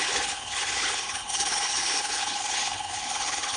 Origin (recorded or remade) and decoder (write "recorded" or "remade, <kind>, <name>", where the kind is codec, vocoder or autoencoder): remade, codec, HILCodec